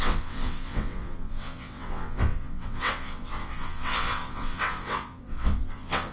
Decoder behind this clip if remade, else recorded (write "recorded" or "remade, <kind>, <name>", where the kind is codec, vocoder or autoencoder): remade, vocoder, WaveNeXt